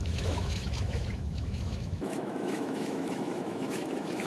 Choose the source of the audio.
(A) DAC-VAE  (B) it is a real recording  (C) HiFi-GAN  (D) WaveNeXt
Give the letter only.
A